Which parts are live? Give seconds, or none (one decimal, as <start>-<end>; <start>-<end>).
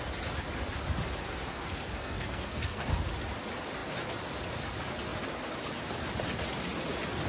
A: 0.0-1.5; 2.9-7.3